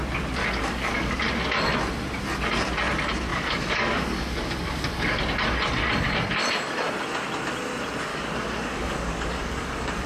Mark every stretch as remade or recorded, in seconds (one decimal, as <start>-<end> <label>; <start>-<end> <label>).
0.0-0.4 recorded; 0.4-1.1 remade; 1.1-3.3 recorded; 3.3-5.2 remade; 5.2-8.1 recorded; 8.1-10.1 remade